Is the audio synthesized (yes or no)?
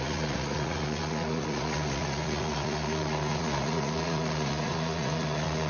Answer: yes